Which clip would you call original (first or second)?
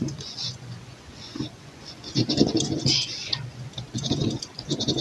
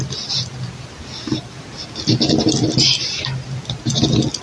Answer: second